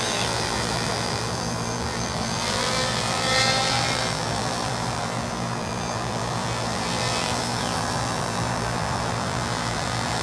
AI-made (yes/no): yes